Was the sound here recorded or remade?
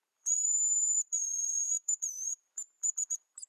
remade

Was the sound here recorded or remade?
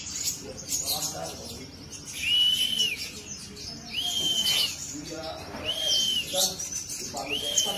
recorded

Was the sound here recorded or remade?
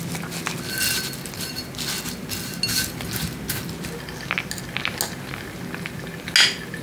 recorded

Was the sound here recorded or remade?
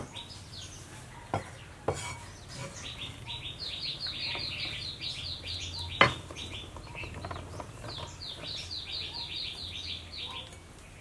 recorded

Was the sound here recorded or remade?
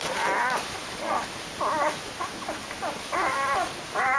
recorded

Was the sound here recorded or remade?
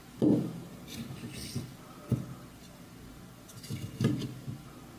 remade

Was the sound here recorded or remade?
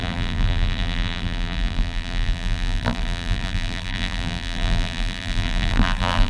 remade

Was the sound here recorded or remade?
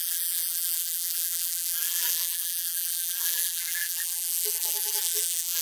remade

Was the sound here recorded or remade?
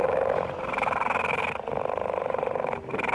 remade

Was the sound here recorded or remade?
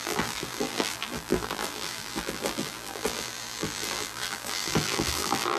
remade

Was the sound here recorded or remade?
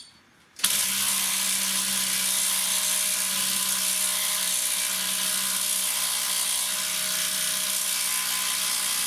recorded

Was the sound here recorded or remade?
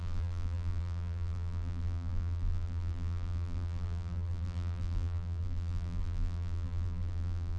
remade